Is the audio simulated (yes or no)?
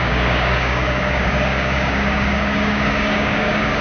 yes